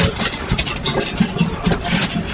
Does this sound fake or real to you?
real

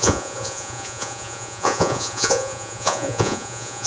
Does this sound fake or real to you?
fake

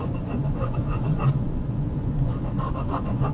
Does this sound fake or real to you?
fake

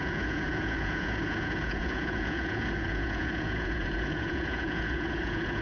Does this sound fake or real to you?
fake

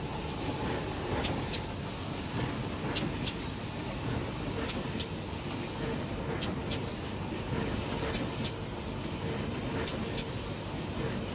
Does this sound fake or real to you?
real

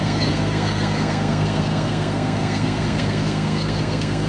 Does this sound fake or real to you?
fake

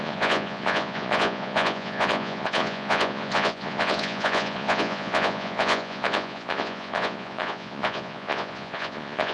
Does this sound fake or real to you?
fake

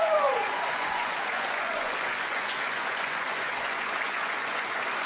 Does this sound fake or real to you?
fake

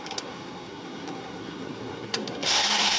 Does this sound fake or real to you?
fake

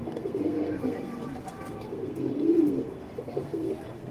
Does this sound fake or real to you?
fake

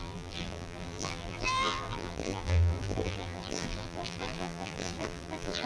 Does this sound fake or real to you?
fake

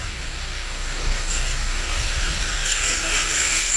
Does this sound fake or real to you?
fake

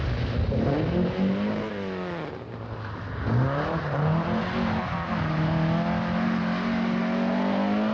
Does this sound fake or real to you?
real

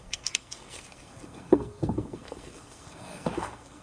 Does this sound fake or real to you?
fake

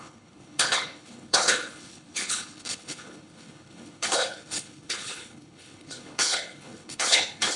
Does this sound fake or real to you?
fake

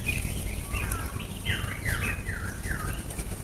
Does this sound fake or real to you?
real